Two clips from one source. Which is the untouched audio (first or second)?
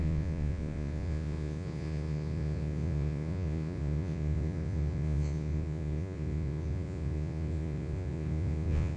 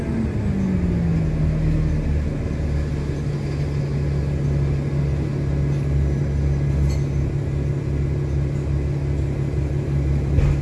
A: second